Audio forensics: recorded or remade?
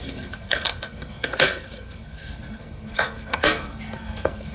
remade